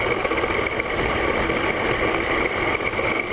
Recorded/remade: recorded